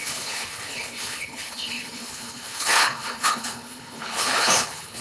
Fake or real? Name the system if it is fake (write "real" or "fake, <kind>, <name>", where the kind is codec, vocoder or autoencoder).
fake, codec, HILCodec